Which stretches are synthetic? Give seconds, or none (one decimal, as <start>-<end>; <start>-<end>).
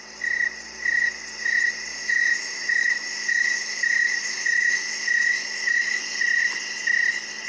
1.9-6.0